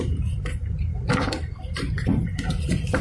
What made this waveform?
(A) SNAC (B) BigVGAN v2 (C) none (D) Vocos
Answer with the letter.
B